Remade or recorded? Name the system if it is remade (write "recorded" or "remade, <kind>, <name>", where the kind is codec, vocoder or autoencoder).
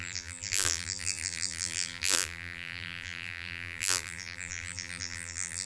remade, vocoder, BigVGAN v2